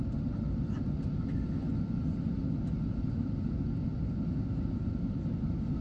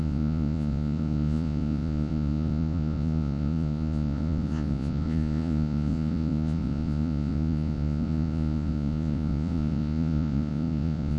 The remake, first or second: second